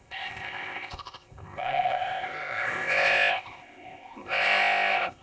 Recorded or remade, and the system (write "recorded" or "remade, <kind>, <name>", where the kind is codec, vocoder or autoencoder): remade, codec, ZipCodec